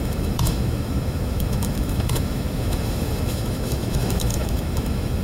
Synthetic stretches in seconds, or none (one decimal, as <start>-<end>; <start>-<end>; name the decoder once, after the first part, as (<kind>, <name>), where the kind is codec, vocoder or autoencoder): 0.0-5.2 (autoencoder, DAC-VAE)